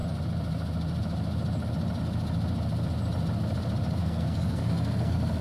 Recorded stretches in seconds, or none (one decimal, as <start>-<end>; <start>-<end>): 0.0-4.0